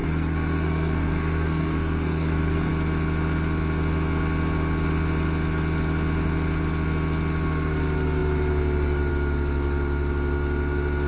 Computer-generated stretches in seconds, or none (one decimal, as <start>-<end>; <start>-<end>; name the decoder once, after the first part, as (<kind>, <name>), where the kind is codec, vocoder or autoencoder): 0.0-2.7 (codec, SNAC)